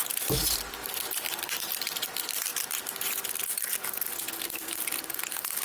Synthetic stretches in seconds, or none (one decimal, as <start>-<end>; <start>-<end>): 0.0-2.1; 2.5-3.3; 3.7-5.6